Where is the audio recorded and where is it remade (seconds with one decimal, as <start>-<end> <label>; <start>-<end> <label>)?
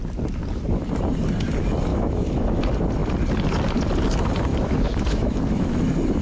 0.0-1.9 recorded; 1.9-2.6 remade; 2.6-4.5 recorded; 4.5-5.8 remade; 5.8-6.2 recorded